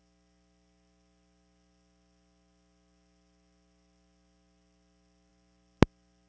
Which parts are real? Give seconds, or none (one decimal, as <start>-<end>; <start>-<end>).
0.0-6.3